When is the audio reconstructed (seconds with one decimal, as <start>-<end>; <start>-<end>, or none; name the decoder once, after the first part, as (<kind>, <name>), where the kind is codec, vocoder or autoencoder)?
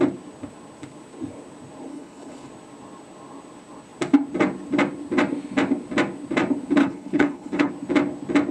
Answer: 1.9-2.5 (codec, HILCodec); 6.8-7.7